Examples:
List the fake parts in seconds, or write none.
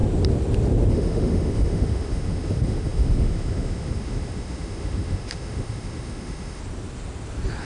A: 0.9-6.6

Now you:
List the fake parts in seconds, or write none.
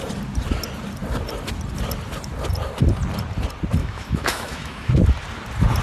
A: 3.8-4.9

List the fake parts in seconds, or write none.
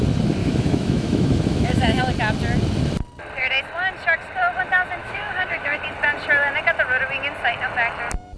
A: 0.4-2.0; 5.0-5.8